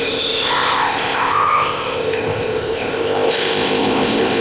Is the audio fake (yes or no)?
yes